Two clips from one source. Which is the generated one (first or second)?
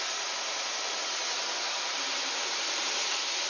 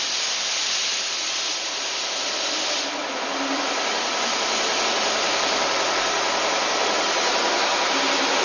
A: first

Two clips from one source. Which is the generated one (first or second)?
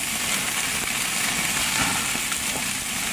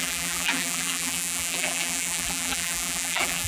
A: second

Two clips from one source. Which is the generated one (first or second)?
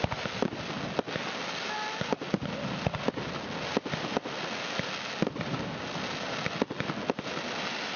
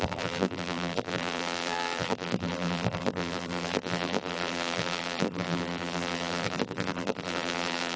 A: second